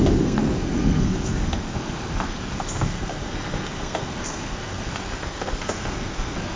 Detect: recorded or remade remade